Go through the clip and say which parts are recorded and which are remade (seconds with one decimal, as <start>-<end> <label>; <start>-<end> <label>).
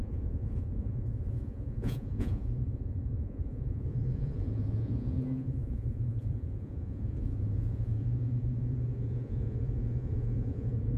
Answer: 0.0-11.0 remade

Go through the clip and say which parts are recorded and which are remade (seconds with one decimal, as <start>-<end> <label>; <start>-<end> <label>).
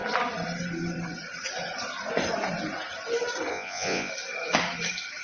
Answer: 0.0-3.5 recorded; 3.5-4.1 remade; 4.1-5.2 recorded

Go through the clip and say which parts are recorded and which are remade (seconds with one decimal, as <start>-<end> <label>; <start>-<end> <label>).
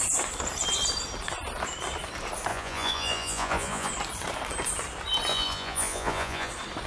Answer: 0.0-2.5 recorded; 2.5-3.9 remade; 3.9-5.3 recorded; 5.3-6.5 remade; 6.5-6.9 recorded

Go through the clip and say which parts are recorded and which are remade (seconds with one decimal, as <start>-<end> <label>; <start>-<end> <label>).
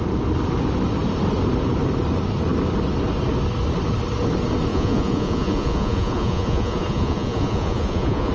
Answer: 0.0-4.7 recorded; 4.7-8.3 remade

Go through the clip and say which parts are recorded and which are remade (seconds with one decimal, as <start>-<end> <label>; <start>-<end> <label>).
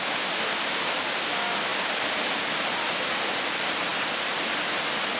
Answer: 0.0-5.2 recorded